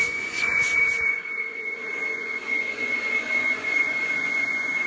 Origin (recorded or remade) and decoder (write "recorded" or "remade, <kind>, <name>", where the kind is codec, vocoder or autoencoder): remade, vocoder, Vocos